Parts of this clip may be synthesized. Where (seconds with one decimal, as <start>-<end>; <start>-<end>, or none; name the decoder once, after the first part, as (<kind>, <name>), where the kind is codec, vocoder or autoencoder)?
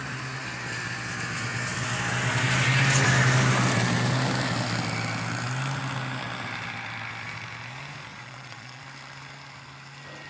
8.1-8.8 (vocoder, Vocos)